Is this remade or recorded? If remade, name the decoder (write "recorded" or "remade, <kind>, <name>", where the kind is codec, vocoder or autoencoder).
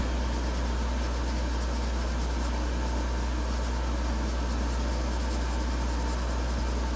recorded